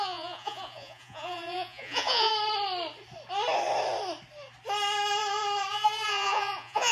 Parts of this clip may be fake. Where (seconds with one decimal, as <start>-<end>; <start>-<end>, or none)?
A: 0.0-2.3; 5.7-6.9